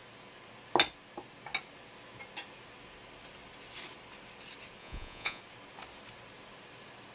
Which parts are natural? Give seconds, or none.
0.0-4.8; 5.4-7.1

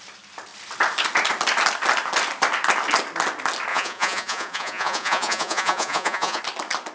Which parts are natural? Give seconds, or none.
0.0-3.7; 6.4-6.9

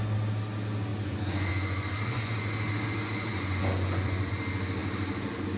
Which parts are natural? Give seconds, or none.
0.0-0.9; 4.3-5.6

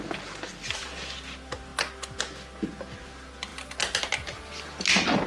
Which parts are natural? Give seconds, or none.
0.0-5.3

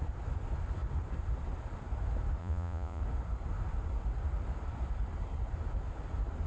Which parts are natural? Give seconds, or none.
0.0-2.4; 3.0-6.5

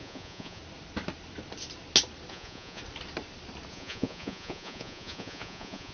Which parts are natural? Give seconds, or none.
0.6-2.3; 2.8-3.7

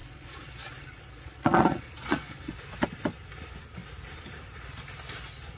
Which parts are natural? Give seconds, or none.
2.5-5.6